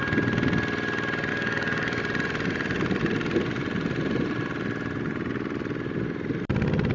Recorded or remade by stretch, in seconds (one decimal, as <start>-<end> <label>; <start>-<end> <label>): 0.0-1.3 recorded; 1.3-2.0 remade; 2.0-6.9 recorded